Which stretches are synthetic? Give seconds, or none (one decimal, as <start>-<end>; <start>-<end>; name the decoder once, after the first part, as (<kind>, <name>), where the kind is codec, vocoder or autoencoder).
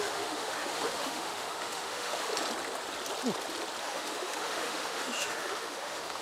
0.0-2.3 (autoencoder, DAC-VAE); 3.8-6.2